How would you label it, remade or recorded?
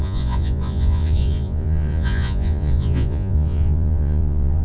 remade